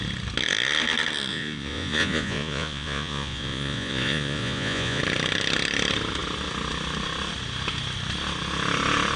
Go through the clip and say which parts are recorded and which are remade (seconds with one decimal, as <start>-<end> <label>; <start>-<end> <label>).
0.0-1.3 recorded; 1.3-5.0 remade; 5.0-9.2 recorded